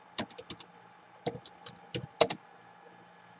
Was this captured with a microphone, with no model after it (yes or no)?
yes